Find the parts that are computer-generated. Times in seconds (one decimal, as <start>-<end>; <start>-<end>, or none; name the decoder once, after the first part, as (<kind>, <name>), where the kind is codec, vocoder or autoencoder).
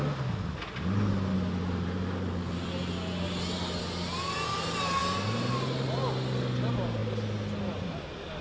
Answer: none